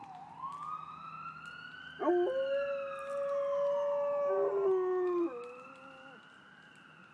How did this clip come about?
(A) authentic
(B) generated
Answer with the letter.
A